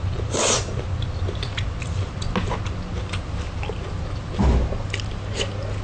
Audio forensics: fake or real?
real